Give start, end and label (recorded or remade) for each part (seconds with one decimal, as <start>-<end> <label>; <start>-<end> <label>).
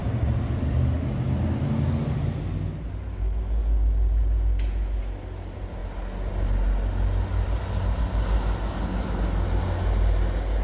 0.0-10.6 recorded